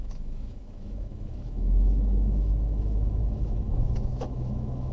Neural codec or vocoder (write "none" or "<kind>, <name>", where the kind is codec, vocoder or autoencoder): autoencoder, DAC-VAE